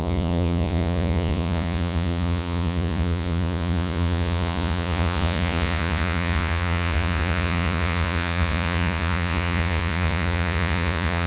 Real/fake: fake